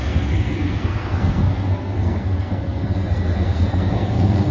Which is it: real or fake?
fake